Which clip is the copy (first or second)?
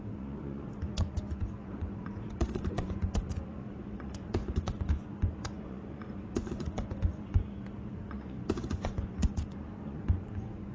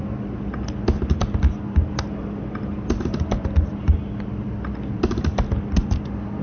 first